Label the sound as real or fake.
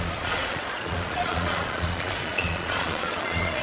fake